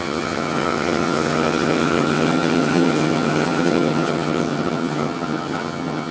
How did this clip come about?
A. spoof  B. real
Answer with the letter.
A